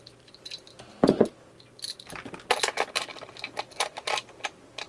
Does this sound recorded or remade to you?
recorded